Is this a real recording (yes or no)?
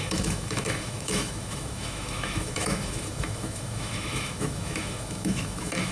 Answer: no